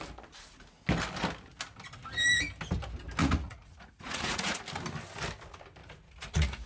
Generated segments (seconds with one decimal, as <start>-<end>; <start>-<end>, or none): 3.2-4.6; 5.8-6.7